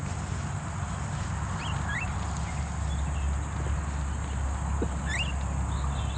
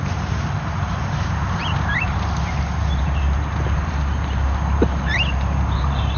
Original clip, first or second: first